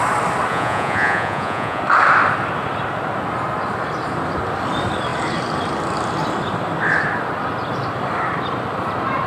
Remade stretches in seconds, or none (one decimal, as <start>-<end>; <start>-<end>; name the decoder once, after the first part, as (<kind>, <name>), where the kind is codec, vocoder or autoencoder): 0.5-1.8 (vocoder, Vocos)